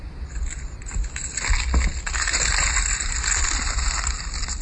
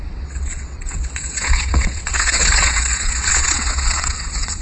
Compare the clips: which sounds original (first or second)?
first